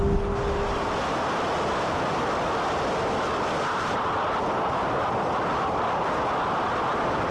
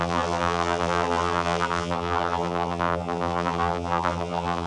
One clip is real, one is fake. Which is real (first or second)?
first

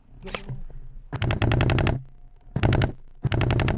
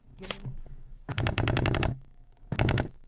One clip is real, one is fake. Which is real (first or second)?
first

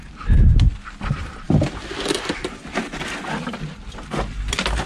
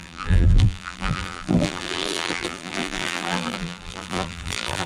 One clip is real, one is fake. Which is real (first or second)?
first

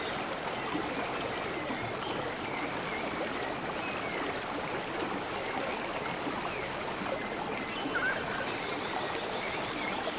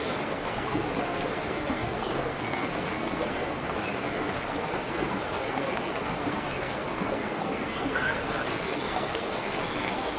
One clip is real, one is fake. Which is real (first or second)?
first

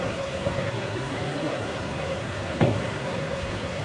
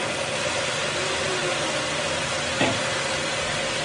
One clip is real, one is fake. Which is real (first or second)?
second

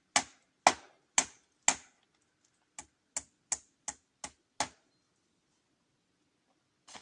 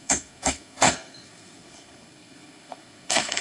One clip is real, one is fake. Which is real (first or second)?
first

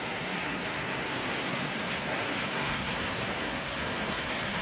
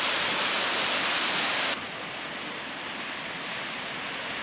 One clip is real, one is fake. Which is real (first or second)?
second